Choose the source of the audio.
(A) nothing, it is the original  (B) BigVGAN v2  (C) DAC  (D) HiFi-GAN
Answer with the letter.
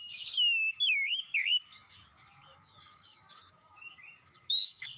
C